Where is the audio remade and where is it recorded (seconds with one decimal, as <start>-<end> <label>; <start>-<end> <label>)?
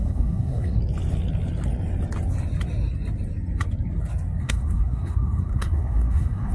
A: 0.0-0.8 remade; 0.8-4.4 recorded; 4.4-6.5 remade